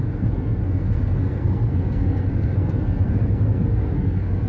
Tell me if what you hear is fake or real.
fake